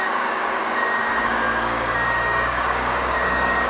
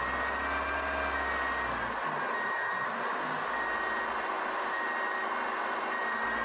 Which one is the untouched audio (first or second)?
second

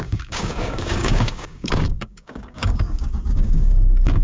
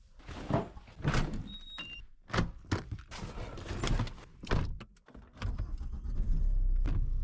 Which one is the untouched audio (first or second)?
second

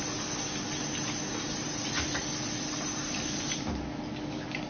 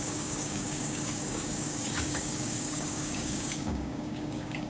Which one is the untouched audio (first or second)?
first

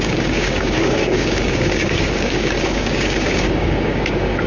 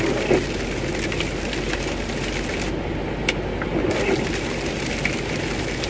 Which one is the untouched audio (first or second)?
second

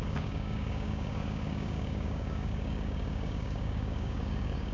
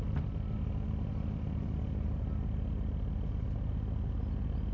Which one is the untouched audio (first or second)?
second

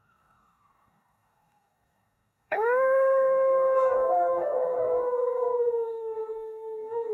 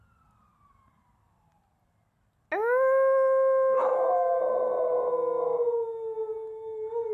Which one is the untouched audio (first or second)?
second